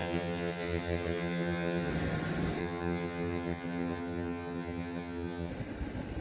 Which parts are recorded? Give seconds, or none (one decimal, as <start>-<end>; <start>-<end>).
1.9-2.6; 5.5-6.2